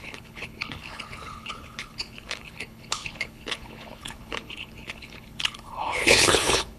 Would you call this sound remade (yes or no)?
yes